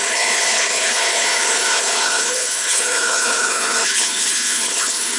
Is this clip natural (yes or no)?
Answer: no